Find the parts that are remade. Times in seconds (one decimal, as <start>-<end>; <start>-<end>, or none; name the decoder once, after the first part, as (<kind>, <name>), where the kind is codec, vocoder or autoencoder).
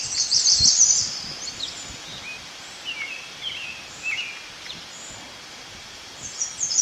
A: 0.0-2.1 (vocoder, BigVGAN v2); 5.4-6.8